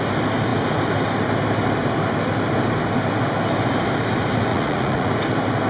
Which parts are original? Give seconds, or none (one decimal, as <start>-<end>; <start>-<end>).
0.0-4.5; 5.1-5.7